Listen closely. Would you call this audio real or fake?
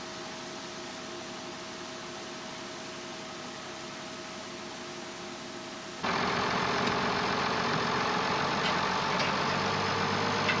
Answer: real